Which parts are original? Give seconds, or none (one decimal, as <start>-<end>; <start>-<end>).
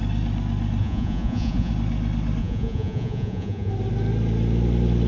0.0-0.8; 1.7-2.4; 3.7-5.1